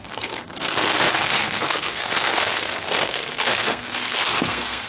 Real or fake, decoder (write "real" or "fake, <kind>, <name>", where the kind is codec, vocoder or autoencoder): fake, codec, SNAC